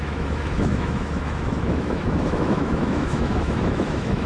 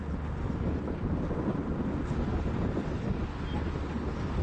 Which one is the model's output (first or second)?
first